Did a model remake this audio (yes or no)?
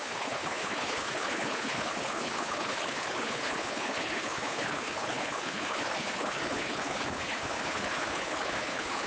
yes